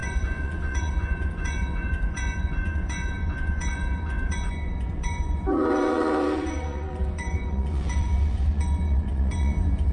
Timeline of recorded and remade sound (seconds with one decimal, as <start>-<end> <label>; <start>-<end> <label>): 0.0-9.9 remade

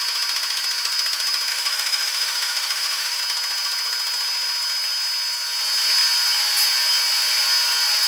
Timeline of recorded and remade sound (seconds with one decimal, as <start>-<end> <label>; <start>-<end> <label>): 0.0-1.5 recorded; 1.5-3.2 remade; 3.2-8.1 recorded

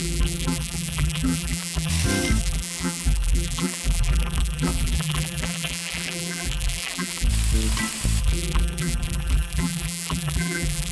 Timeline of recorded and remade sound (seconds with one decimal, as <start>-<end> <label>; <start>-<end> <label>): 0.0-1.9 remade; 1.9-2.4 recorded; 2.4-7.3 remade; 7.3-8.2 recorded; 8.2-10.9 remade

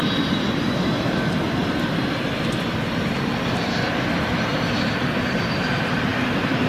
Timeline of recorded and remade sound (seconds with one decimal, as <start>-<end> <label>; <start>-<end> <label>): 0.0-6.7 remade

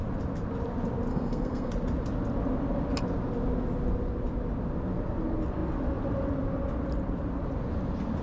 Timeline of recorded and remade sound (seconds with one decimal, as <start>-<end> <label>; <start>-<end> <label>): 0.0-1.1 recorded; 1.1-1.7 remade; 1.7-8.2 recorded